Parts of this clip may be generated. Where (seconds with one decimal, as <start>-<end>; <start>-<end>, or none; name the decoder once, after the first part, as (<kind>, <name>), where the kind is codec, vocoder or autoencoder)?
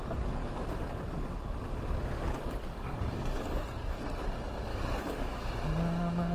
2.6-4.0 (codec, DAC); 4.7-5.5